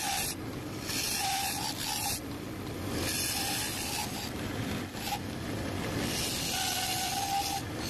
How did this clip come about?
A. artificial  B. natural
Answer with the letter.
B